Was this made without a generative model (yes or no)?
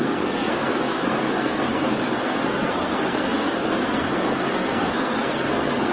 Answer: no